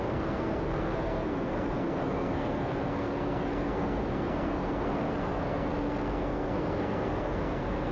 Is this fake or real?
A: fake